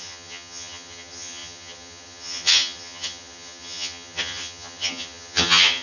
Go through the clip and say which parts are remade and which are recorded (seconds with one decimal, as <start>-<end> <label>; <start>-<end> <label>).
0.0-5.8 remade